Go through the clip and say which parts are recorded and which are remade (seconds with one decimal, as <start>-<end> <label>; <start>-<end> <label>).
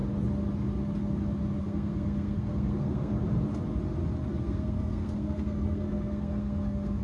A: 0.0-1.6 recorded; 1.6-3.1 remade; 3.1-4.3 recorded; 4.3-7.0 remade